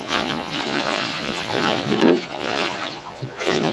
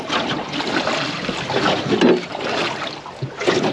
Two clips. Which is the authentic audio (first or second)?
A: second